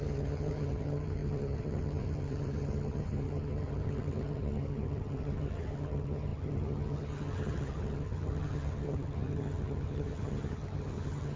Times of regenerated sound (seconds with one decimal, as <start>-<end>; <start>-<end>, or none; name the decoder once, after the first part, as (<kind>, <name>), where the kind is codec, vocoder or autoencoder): 0.0-11.4 (vocoder, HiFi-GAN)